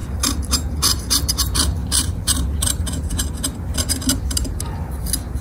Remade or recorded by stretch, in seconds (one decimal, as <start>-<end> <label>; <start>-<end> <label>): 0.0-5.4 recorded